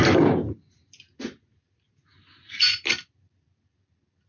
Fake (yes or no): no